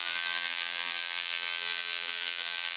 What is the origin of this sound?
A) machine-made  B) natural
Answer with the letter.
A